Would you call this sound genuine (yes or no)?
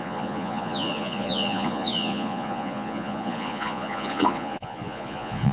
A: no